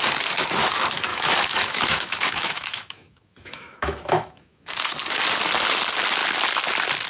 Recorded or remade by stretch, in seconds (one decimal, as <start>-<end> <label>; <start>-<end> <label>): 0.0-1.1 recorded; 1.1-4.9 remade; 4.9-7.1 recorded